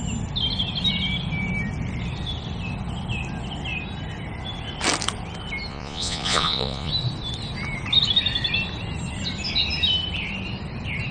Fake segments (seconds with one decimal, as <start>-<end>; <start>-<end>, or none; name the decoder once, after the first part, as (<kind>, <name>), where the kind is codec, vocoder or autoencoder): 5.7-6.9 (vocoder, Vocos)